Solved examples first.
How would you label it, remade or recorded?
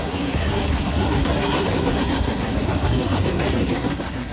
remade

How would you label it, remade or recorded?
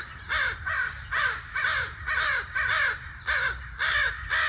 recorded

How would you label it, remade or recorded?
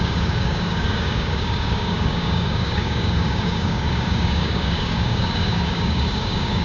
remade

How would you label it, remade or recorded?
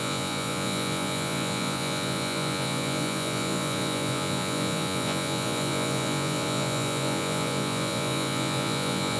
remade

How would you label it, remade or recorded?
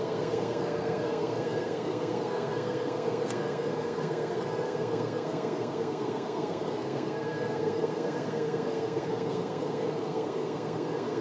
remade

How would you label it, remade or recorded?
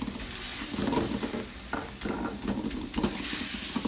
recorded